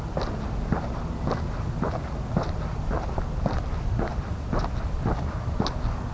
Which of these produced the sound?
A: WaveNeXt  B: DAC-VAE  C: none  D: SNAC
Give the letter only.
C